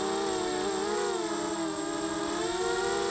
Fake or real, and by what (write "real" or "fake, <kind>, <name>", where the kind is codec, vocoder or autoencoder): real